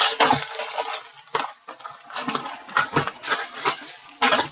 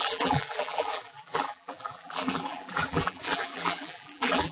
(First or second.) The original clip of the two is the first